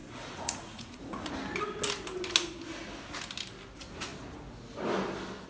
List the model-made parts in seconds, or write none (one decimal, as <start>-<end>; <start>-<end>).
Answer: 0.0-1.3